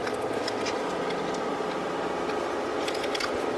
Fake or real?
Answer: real